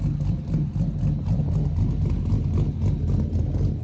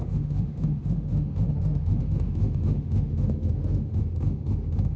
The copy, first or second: second